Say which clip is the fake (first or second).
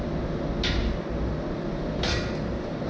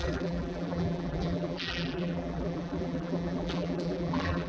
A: second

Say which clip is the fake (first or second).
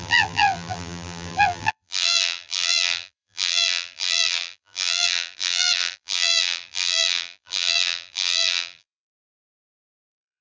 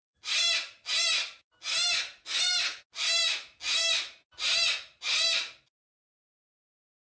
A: first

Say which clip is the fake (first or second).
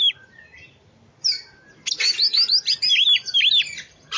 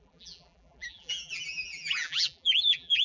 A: second